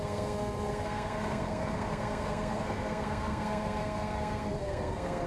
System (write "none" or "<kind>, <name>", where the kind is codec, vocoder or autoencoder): codec, SNAC